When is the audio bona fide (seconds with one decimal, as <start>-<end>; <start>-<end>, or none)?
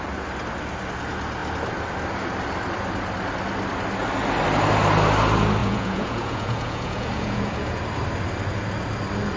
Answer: 0.0-5.6; 7.8-9.4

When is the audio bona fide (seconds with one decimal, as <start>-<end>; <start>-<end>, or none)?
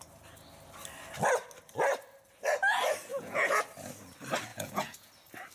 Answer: 0.0-3.1; 3.6-4.5; 5.1-5.5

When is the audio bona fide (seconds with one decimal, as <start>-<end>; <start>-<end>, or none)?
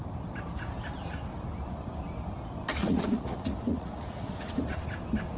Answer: 0.0-2.8; 4.8-5.4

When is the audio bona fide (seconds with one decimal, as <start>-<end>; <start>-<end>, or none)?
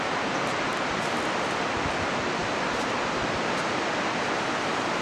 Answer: 0.0-0.7; 2.0-5.0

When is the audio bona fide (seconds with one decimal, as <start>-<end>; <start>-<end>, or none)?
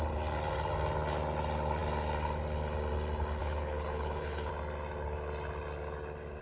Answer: 0.0-3.4; 4.5-6.4